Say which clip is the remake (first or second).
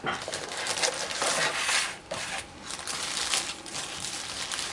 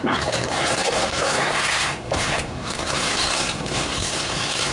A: second